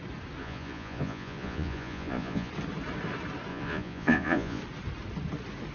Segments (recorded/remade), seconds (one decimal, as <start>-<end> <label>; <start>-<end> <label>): 0.0-0.4 recorded; 0.4-2.5 remade; 2.5-3.5 recorded; 3.5-4.6 remade; 4.6-5.7 recorded